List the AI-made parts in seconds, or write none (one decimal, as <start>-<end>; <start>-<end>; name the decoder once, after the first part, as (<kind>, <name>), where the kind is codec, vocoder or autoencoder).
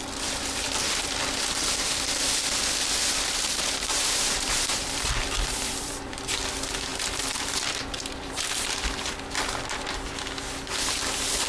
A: 3.9-6.4 (vocoder, BigVGAN v2); 6.9-9.1